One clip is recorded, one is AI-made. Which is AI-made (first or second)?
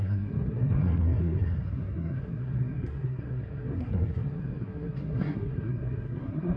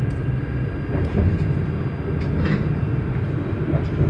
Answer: first